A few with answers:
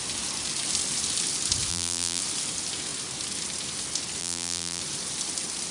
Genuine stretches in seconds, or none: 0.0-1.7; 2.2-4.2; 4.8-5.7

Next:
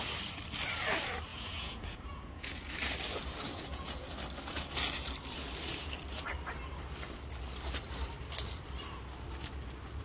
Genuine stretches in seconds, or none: 0.0-1.3; 2.7-3.5; 4.1-10.0